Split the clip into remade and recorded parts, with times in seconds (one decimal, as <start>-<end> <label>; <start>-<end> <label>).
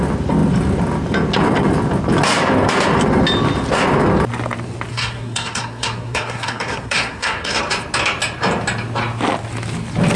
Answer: 0.0-4.9 recorded; 4.9-7.6 remade; 7.6-10.2 recorded